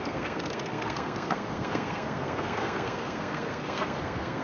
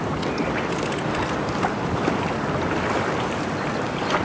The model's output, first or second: first